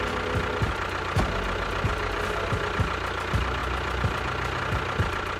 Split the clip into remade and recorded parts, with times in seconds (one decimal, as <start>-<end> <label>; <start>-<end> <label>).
0.0-5.4 recorded